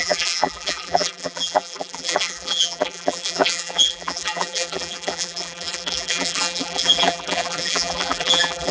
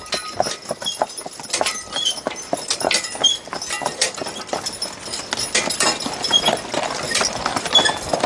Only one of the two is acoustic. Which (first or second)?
second